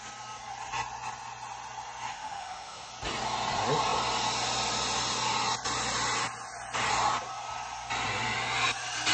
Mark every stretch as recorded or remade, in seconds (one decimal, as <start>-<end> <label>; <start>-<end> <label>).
0.0-2.1 recorded; 2.1-2.9 remade; 2.9-9.1 recorded